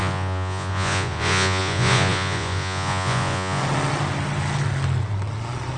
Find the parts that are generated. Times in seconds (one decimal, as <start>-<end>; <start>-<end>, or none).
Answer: 0.0-3.6